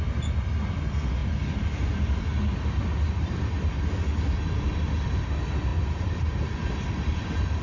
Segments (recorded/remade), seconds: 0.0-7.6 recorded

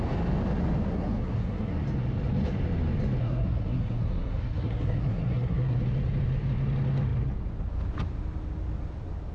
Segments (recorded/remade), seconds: 0.0-0.9 recorded; 0.9-1.7 remade; 1.7-3.2 recorded; 3.2-5.8 remade; 5.8-9.3 recorded

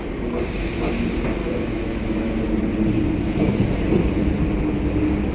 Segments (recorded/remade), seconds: 0.0-1.4 recorded; 1.4-2.4 remade; 2.4-5.3 recorded

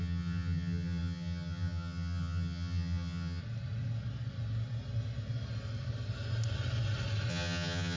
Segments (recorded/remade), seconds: 0.0-3.4 remade; 3.4-7.3 recorded; 7.3-8.0 remade

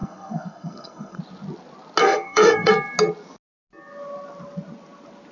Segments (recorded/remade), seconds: 0.0-1.2 remade; 1.2-2.0 recorded; 2.0-2.7 remade; 2.7-5.3 recorded

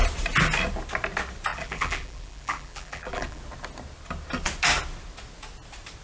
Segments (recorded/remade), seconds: 0.0-1.5 recorded; 1.5-3.4 remade; 3.4-6.0 recorded

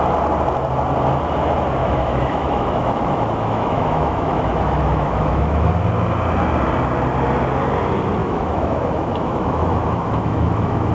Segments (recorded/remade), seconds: 0.0-1.8 recorded; 1.8-5.7 remade; 5.7-8.2 recorded; 8.2-10.9 remade

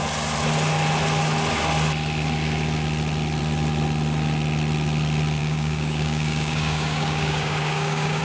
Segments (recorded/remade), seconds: 0.0-5.4 recorded; 5.4-8.2 remade